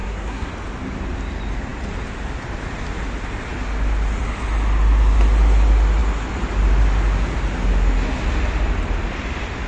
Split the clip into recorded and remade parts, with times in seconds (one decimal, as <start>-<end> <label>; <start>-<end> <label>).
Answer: 0.0-0.5 remade; 0.5-9.7 recorded